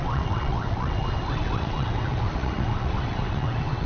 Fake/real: fake